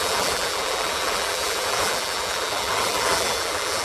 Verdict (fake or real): fake